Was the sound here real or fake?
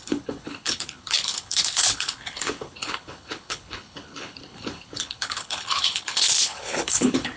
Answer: fake